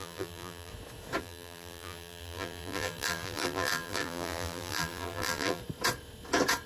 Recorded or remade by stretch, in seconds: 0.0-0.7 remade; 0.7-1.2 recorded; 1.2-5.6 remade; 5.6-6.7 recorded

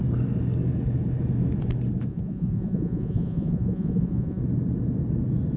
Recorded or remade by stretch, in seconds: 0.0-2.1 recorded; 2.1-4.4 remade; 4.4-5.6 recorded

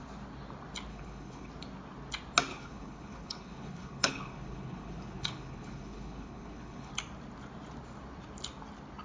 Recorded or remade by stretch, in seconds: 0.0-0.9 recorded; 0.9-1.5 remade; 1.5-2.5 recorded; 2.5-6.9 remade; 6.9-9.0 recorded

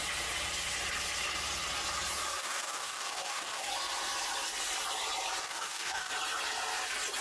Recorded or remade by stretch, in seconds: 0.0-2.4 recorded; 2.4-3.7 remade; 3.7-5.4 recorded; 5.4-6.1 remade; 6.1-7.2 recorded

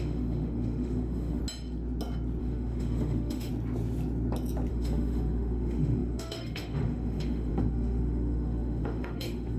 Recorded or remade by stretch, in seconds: 0.0-1.4 remade; 1.4-2.4 recorded; 2.4-3.5 remade; 3.5-4.7 recorded; 4.7-9.6 remade